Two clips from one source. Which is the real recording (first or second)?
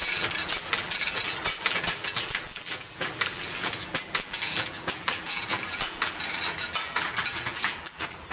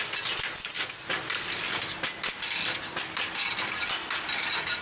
second